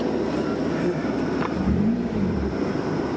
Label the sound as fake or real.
fake